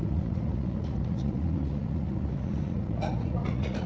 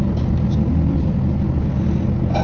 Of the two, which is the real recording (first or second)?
second